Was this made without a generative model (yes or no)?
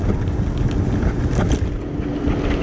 yes